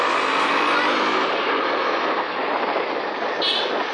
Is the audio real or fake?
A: real